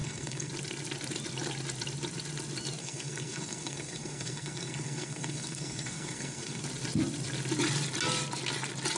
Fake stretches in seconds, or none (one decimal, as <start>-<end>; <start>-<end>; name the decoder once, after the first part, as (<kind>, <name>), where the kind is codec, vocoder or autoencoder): 0.0-0.5 (codec, SNAC); 2.8-6.6